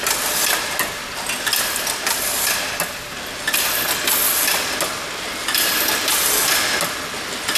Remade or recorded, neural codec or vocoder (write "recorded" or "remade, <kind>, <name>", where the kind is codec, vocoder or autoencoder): recorded